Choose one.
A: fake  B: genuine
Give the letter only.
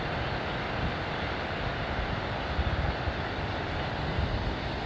B